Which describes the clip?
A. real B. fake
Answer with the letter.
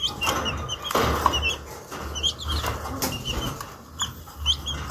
A